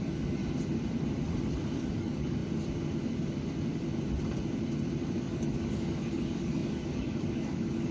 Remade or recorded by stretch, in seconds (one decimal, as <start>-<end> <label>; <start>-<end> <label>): 0.0-0.4 remade; 0.4-1.9 recorded; 1.9-2.4 remade; 2.4-5.2 recorded; 5.2-7.9 remade